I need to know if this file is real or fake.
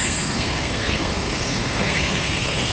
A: fake